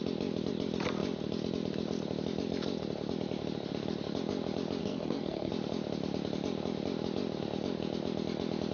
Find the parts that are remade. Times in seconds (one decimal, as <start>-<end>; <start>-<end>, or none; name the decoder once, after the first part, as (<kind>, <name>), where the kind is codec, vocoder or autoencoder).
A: 4.8-5.5 (codec, SNAC)